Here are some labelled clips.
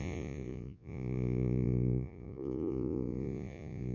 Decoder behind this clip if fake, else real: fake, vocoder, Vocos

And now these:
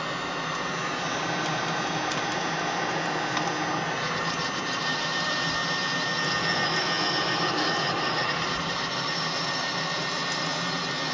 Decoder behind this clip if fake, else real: real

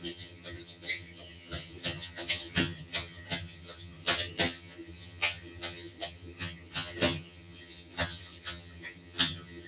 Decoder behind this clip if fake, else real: fake, vocoder, HiFi-GAN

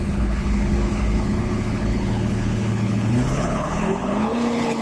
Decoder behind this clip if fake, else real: fake, codec, HILCodec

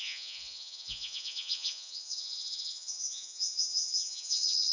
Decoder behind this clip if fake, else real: fake, vocoder, Vocos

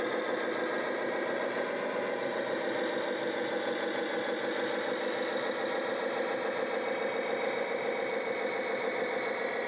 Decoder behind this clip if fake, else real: real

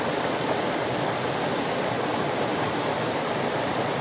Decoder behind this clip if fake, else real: real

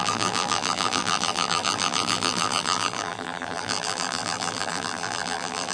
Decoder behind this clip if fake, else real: fake, vocoder, BigVGAN v2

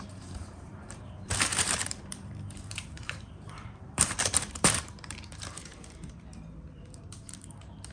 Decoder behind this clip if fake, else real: fake, vocoder, BigVGAN v2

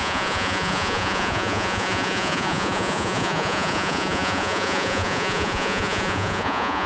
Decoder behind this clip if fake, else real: fake, vocoder, Vocos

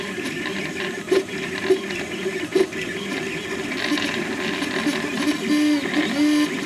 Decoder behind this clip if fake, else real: real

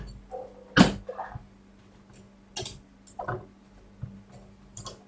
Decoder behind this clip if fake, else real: real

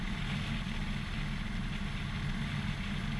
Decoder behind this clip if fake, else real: real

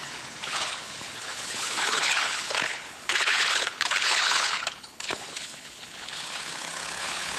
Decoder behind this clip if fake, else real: fake, codec, HILCodec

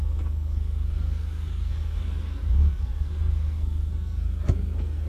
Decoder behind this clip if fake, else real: fake, codec, SNAC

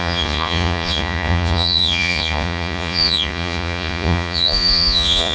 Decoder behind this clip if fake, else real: fake, vocoder, Vocos